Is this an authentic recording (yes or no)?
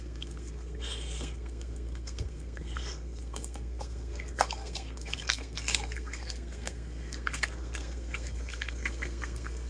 no